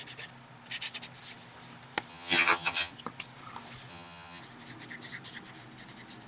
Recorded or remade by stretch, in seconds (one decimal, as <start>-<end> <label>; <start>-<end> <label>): 0.0-2.1 recorded; 2.1-2.9 remade; 2.9-3.9 recorded; 3.9-4.4 remade; 4.4-6.3 recorded